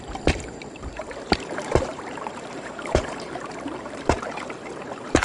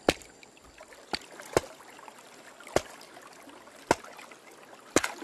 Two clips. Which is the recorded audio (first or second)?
second